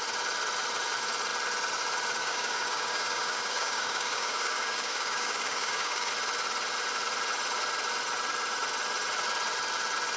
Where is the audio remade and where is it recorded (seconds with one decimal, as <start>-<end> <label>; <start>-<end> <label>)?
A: 0.0-2.2 recorded; 2.2-6.1 remade; 6.1-10.2 recorded

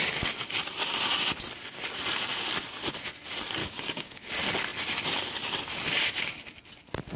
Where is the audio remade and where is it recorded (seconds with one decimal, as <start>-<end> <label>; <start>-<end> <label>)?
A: 0.0-3.6 recorded; 3.6-4.3 remade; 4.3-7.2 recorded